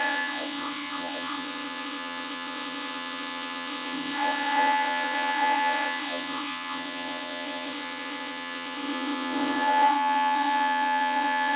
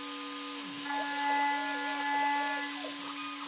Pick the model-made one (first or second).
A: first